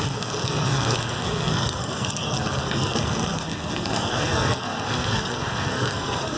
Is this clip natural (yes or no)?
no